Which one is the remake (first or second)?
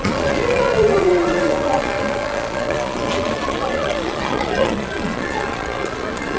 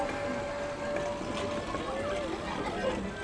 first